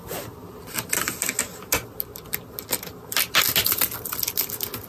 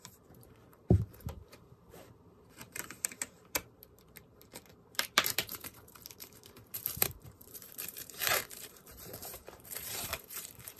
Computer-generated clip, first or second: second